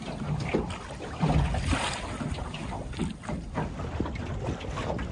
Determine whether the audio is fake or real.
real